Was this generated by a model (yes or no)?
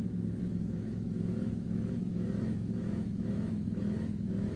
yes